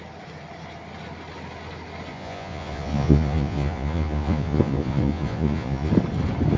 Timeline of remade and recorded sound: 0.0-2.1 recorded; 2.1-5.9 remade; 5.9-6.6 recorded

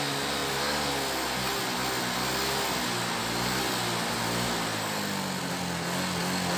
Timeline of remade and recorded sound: 0.0-6.6 recorded

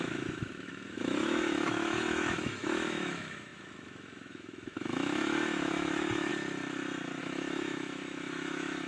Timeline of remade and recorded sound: 0.0-6.3 remade; 6.3-7.2 recorded; 7.2-8.9 remade